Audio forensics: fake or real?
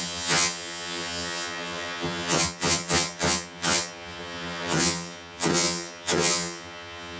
fake